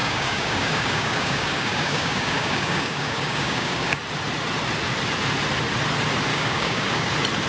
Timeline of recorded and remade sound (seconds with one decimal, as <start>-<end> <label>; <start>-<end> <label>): 0.0-4.0 remade; 4.0-6.3 recorded; 6.3-7.1 remade; 7.1-7.5 recorded